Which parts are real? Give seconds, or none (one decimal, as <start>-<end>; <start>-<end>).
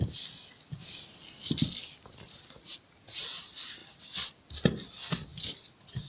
0.0-0.8; 1.5-3.8; 4.4-5.3